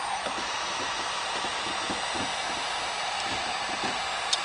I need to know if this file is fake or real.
real